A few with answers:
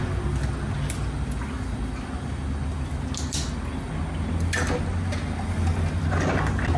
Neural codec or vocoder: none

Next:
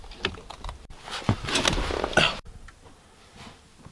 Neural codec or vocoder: none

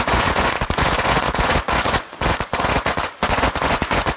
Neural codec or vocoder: vocoder, Vocos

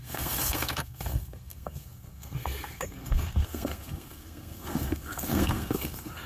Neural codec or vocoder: codec, SNAC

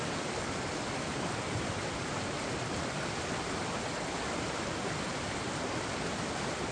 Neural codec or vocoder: none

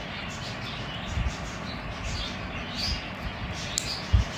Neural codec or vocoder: none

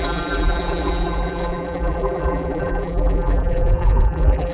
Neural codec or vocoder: vocoder, BigVGAN v2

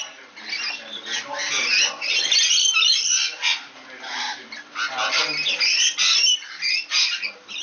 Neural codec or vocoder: none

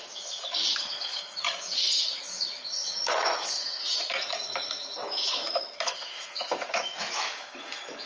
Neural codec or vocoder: autoencoder, DAC-VAE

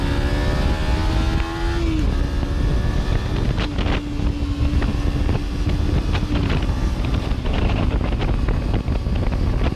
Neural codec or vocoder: none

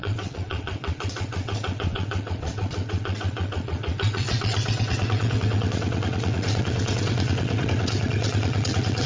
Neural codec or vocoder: vocoder, WaveNeXt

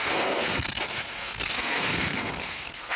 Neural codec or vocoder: codec, SNAC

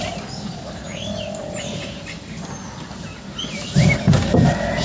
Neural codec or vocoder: none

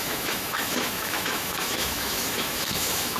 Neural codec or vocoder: autoencoder, DAC-VAE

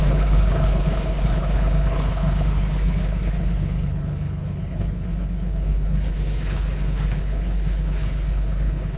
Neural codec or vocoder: codec, HILCodec